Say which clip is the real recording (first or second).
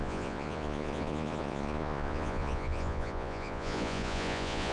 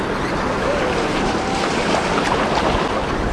second